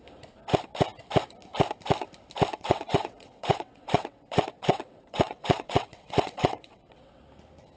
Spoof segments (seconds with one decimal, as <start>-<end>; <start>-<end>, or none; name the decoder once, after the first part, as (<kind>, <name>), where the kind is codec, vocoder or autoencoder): 2.5-7.2 (vocoder, WaveNeXt)